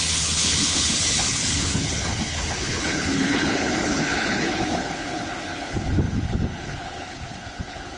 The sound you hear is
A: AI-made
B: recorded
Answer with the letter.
A